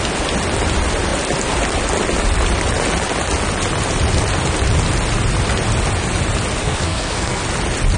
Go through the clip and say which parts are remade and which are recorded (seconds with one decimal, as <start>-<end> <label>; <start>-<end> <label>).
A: 0.0-6.6 recorded; 6.6-7.4 remade; 7.4-8.0 recorded